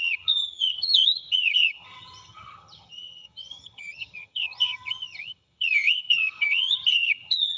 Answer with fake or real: fake